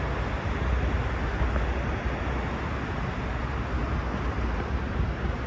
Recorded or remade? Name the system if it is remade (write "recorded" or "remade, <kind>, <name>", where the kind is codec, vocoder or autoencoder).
recorded